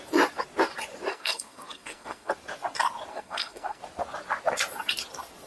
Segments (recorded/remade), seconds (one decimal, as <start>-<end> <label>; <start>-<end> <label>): 0.0-1.1 recorded; 1.1-2.3 remade; 2.3-3.1 recorded; 3.1-3.8 remade; 3.8-5.5 recorded